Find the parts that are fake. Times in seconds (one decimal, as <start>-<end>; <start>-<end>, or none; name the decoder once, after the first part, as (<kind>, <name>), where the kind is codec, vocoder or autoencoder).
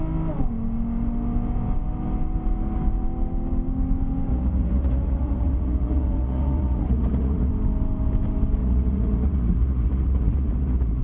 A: 4.3-7.5 (vocoder, Vocos); 8.6-11.0